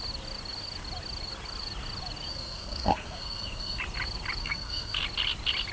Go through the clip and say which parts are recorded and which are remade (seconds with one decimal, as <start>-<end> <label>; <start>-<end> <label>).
0.0-2.3 recorded; 2.3-3.8 remade; 3.8-4.4 recorded; 4.4-5.0 remade; 5.0-5.7 recorded